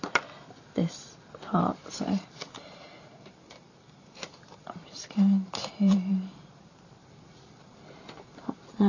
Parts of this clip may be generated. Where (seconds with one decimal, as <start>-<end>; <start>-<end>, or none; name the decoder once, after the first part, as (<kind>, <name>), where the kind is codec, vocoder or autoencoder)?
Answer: 1.8-6.1 (vocoder, BigVGAN v2); 7.0-8.9